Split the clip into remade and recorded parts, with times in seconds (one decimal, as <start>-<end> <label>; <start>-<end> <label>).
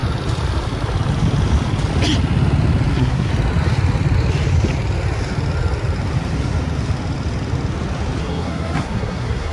0.0-2.9 recorded; 2.9-3.3 remade; 3.3-8.2 recorded; 8.2-9.5 remade